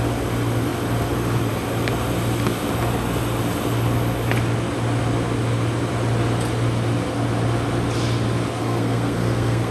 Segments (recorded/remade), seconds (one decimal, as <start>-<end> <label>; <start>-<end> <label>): 0.0-8.6 recorded; 8.6-9.7 remade